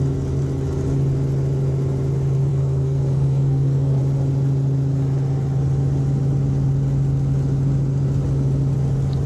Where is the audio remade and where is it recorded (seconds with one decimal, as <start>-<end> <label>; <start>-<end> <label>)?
0.0-2.5 recorded; 2.5-4.0 remade; 4.0-9.3 recorded